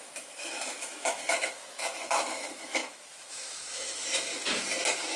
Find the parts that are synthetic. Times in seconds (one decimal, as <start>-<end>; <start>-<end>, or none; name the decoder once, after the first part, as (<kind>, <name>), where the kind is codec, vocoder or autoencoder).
0.0-4.3 (autoencoder, DAC-VAE)

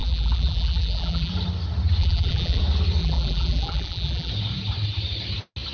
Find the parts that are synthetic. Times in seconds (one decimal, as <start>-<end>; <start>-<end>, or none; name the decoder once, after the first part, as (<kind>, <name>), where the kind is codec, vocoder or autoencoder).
0.0-1.3 (vocoder, BigVGAN v2); 2.0-2.6; 3.0-4.3

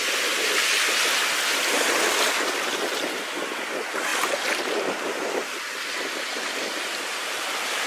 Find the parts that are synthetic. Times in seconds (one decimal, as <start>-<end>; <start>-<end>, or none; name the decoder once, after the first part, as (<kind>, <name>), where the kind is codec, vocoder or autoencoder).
4.1-5.8 (vocoder, BigVGAN v2); 6.3-7.9